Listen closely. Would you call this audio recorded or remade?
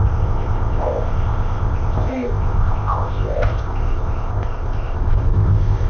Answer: remade